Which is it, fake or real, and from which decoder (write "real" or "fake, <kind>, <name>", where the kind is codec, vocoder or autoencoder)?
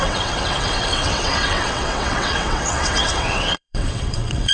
fake, vocoder, WaveNeXt